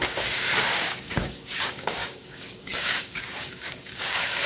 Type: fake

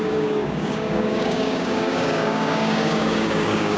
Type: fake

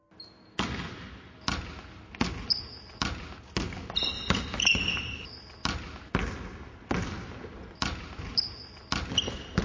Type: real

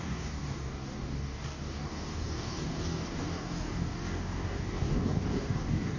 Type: fake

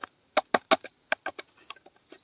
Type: real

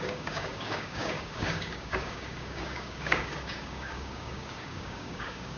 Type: fake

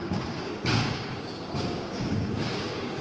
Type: fake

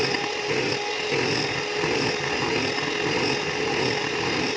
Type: real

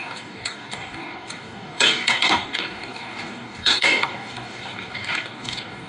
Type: fake